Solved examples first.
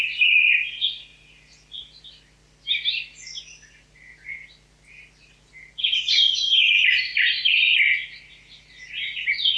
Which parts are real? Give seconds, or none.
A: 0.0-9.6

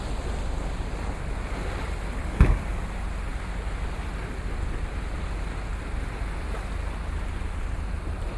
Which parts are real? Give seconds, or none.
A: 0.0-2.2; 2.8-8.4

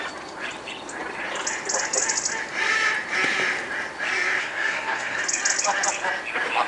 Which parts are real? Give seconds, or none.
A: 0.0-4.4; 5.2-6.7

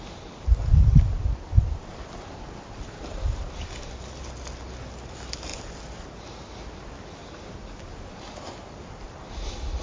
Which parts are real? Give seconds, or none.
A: 0.0-9.8

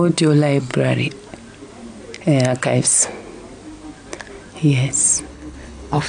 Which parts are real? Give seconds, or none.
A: 0.0-5.3

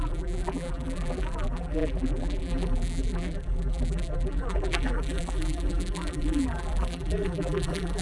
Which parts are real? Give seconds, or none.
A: none